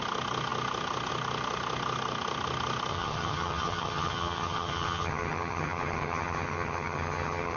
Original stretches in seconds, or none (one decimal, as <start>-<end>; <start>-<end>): 0.0-2.9